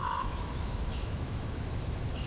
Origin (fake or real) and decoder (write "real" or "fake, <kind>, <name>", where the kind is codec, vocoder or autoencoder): fake, autoencoder, DAC-VAE